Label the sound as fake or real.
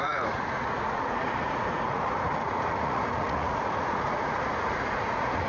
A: fake